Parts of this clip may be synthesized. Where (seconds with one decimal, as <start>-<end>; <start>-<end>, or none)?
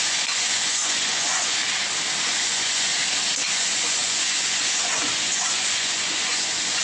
0.0-1.6; 2.2-2.9; 3.5-6.8